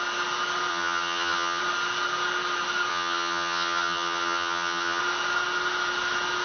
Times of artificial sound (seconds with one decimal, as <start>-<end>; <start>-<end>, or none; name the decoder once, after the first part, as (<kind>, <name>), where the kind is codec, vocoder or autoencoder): 0.7-1.6 (vocoder, HiFi-GAN); 2.9-5.0